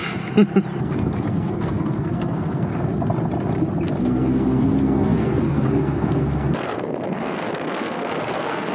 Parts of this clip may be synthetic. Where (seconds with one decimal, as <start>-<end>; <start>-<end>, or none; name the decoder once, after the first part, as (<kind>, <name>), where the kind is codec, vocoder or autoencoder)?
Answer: 0.8-2.7 (codec, SNAC); 4.0-8.7